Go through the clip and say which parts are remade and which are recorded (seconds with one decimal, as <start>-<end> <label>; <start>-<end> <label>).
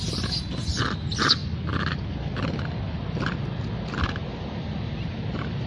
0.0-5.7 recorded